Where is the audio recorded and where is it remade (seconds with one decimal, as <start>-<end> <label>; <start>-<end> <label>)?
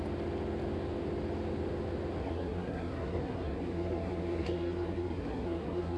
0.0-2.2 recorded; 2.2-6.0 remade